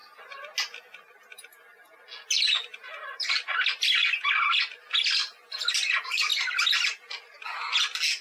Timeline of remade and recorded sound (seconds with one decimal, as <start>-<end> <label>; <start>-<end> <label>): 0.0-8.2 recorded

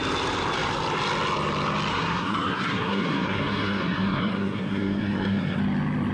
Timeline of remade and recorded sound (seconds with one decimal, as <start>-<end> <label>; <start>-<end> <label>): 0.0-1.9 recorded; 1.9-5.6 remade; 5.6-6.1 recorded

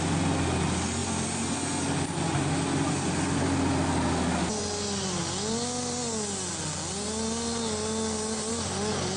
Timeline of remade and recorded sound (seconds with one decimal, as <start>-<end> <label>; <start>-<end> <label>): 0.0-9.2 recorded

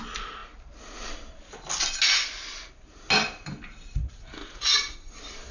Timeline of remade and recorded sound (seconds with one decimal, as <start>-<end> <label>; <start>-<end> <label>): 0.0-4.4 recorded; 4.4-5.1 remade; 5.1-5.5 recorded